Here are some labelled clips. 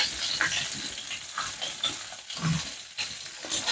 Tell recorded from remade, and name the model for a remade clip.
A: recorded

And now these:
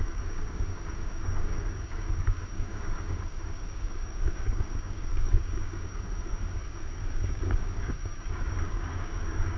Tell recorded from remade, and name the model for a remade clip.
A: remade, codec, DAC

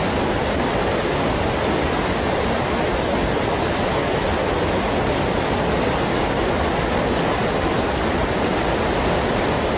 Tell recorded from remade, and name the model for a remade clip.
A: recorded